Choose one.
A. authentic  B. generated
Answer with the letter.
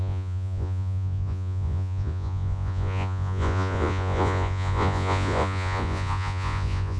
B